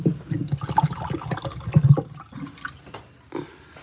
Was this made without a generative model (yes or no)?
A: yes